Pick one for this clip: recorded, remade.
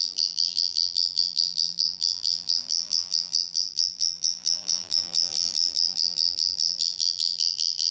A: remade